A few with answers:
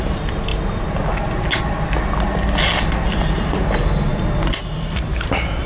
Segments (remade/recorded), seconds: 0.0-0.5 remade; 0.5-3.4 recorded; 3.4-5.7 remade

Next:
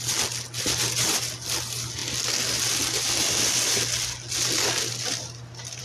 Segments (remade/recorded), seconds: 0.0-5.8 recorded

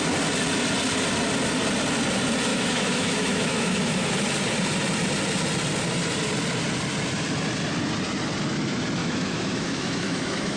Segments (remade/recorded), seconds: 0.0-2.5 recorded; 2.5-4.1 remade; 4.1-9.0 recorded; 9.0-10.6 remade

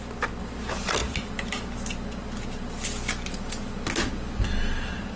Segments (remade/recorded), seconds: 0.0-5.2 recorded

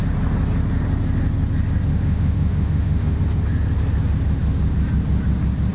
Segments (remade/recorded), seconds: 0.0-1.9 recorded; 1.9-3.2 remade; 3.2-5.7 recorded